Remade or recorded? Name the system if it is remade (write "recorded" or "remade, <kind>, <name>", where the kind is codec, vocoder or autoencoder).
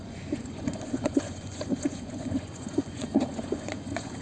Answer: remade, vocoder, Vocos